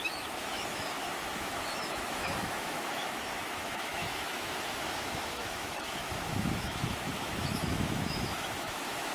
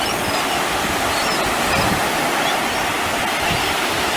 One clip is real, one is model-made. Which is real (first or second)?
second